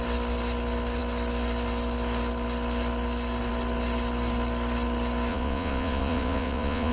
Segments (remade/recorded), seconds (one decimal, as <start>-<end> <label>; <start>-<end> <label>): 0.0-5.3 recorded; 5.3-6.9 remade

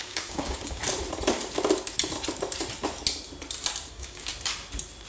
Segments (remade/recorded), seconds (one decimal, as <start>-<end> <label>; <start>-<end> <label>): 0.0-0.8 remade; 0.8-3.9 recorded; 3.9-4.3 remade; 4.3-5.1 recorded

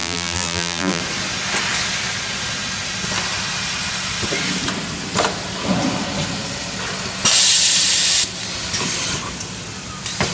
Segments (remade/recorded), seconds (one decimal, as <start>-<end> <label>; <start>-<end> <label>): 0.0-1.0 remade; 1.0-10.3 recorded

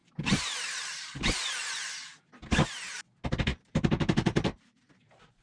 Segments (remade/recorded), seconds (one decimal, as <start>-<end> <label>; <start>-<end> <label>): 0.0-1.3 remade; 1.3-3.5 recorded; 3.5-5.4 remade

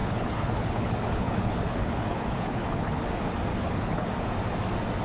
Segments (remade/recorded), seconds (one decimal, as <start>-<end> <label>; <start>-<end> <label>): 0.0-3.0 remade; 3.0-3.5 recorded; 3.5-4.1 remade; 4.1-5.0 recorded

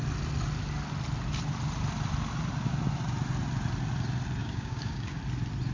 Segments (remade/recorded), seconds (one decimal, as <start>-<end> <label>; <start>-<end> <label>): 0.0-4.4 recorded; 4.4-5.2 remade; 5.2-5.7 recorded

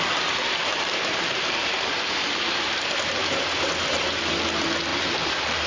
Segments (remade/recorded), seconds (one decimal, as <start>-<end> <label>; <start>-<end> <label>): 0.0-0.7 recorded; 0.7-3.2 remade; 3.2-4.9 recorded; 4.9-5.7 remade